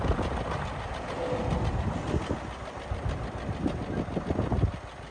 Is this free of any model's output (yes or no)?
yes